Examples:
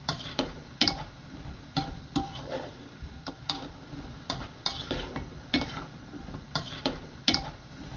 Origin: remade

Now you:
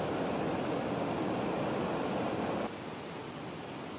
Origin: recorded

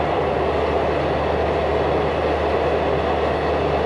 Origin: recorded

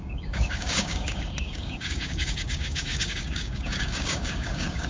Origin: remade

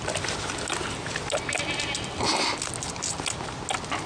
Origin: recorded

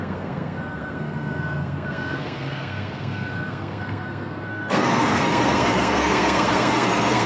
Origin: remade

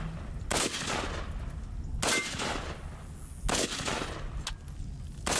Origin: recorded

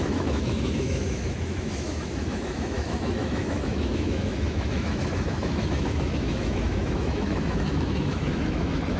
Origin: remade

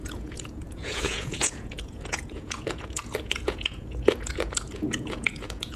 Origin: remade